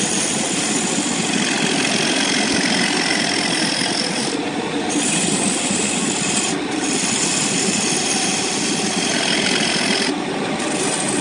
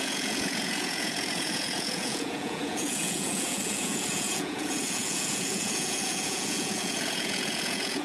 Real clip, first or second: first